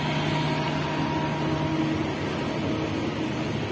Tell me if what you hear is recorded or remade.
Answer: recorded